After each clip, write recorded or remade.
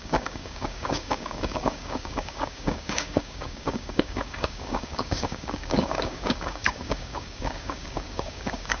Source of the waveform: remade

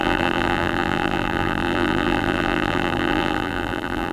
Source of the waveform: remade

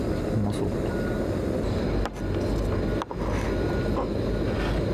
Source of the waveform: recorded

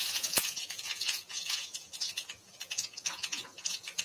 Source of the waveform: remade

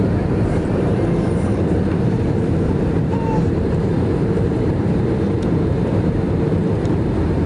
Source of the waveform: remade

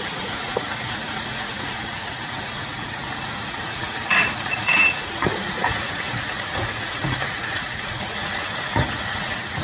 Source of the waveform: remade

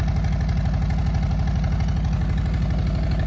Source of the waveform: recorded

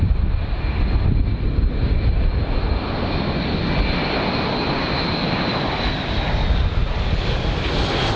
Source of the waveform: recorded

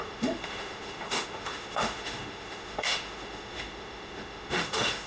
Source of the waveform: remade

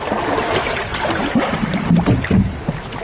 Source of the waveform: recorded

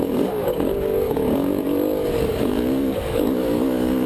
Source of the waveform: remade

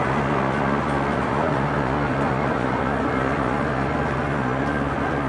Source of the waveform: remade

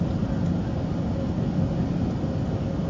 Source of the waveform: recorded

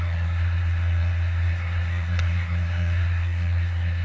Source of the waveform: remade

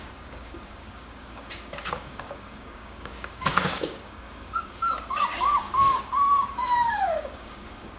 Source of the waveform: remade